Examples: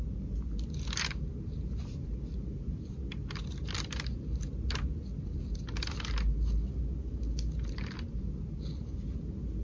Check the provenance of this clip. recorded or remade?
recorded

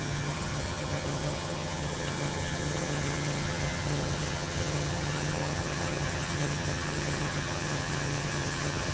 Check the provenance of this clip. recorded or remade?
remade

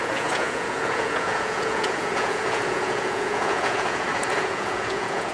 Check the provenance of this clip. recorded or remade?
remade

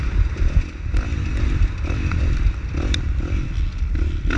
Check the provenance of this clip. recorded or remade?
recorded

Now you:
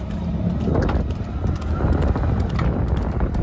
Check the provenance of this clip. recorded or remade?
recorded